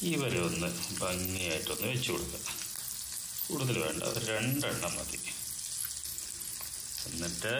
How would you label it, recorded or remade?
recorded